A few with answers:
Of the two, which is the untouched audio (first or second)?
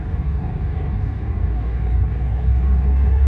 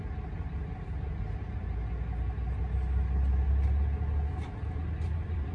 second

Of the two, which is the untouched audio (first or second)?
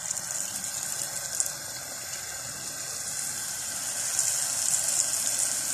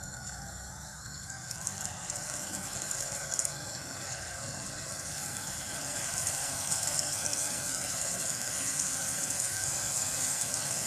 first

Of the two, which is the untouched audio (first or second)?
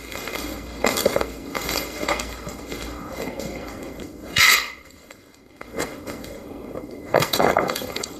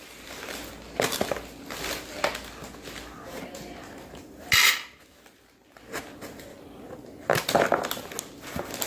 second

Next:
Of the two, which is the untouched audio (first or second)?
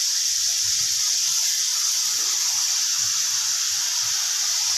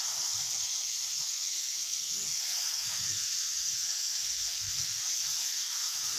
first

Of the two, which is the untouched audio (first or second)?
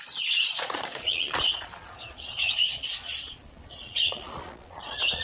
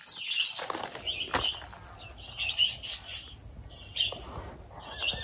second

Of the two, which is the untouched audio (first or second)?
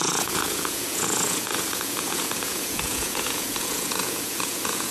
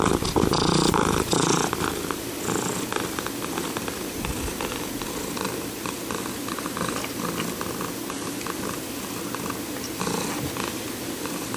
second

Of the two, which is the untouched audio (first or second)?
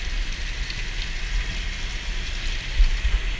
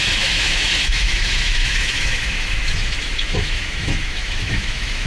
first